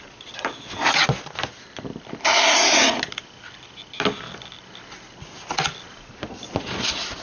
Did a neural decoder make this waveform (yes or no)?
no